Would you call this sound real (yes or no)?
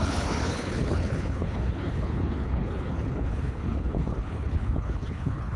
no